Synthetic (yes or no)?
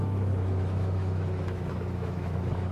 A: yes